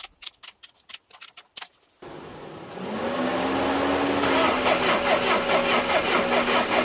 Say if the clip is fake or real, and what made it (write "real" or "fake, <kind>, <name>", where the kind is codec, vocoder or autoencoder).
real